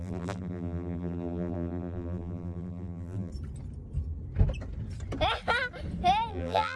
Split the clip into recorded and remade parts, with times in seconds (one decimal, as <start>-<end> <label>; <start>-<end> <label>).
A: 0.0-3.3 remade; 3.3-6.3 recorded; 6.3-6.8 remade